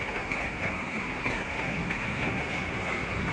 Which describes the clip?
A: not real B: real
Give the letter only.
A